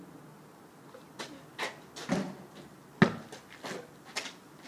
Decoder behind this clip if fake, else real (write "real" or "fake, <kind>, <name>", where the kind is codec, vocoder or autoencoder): real